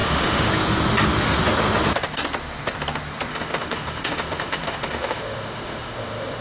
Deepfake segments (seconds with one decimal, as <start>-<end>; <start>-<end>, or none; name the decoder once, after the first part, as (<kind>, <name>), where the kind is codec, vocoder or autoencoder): 0.0-0.5 (autoencoder, DAC-VAE); 3.3-6.4